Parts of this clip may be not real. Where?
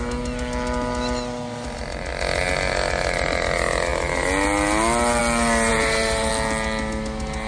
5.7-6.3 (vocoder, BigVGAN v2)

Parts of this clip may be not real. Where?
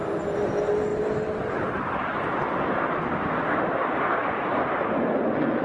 4.2-4.7 (vocoder, BigVGAN v2)